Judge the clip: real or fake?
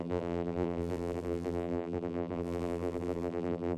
fake